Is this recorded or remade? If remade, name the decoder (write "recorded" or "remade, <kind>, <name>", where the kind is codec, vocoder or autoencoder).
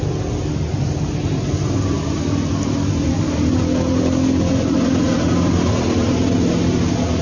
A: recorded